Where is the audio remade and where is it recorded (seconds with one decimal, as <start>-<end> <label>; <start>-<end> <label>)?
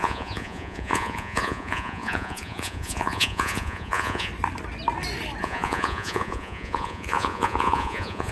0.0-4.3 remade; 4.3-5.4 recorded; 5.4-8.3 remade